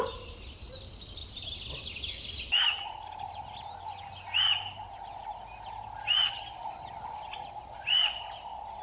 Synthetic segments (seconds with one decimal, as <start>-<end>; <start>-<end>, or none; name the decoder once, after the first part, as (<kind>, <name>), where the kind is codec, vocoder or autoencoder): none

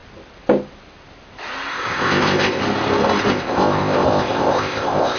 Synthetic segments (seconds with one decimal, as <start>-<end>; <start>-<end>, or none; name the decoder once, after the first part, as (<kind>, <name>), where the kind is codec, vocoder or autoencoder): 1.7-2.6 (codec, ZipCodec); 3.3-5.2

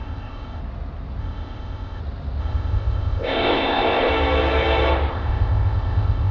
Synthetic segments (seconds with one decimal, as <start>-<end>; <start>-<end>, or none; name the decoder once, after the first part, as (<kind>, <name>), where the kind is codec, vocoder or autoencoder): 0.0-0.6 (codec, ZipCodec); 1.2-2.0; 2.4-4.1; 5.1-6.3

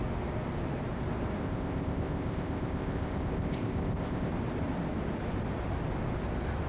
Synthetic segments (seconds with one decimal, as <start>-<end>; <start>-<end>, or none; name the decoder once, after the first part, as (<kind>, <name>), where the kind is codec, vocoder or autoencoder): 1.4-4.3 (codec, ZipCodec)

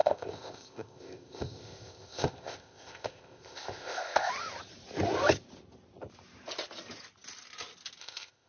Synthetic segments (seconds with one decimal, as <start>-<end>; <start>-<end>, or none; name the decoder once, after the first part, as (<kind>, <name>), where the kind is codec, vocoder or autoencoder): 0.0-4.3 (codec, ZipCodec); 8.0-8.5

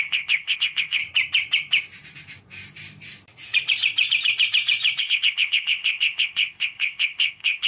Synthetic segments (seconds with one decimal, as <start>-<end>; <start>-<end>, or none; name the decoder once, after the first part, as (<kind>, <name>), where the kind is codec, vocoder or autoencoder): 0.0-1.0 (codec, ZipCodec); 5.0-7.7